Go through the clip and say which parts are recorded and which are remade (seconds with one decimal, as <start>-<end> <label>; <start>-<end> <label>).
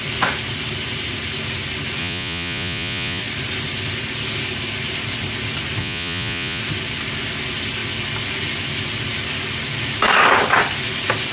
0.0-2.0 recorded; 2.0-3.2 remade; 3.2-5.8 recorded; 5.8-6.6 remade; 6.6-11.3 recorded